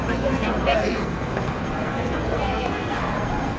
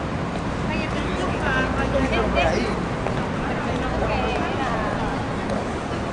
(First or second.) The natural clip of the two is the second